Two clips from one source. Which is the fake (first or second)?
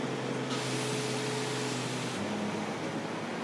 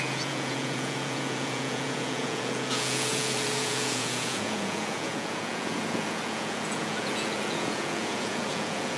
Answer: second